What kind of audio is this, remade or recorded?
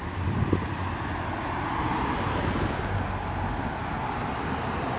recorded